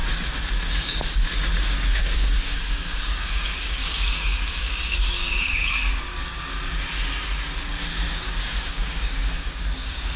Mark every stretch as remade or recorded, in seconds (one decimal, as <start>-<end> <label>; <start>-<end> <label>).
0.0-0.7 recorded; 0.7-6.2 remade; 6.2-8.1 recorded; 8.1-10.2 remade